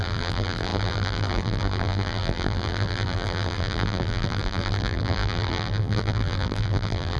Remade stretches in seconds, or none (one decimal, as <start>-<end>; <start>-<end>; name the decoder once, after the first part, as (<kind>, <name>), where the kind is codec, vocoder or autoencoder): 0.0-7.2 (vocoder, BigVGAN v2)